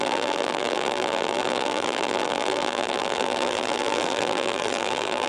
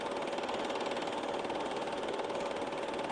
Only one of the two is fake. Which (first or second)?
first